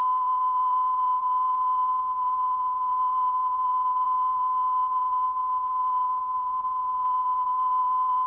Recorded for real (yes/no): no